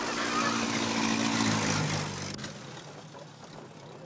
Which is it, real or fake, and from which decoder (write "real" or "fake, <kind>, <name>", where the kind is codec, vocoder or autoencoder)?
real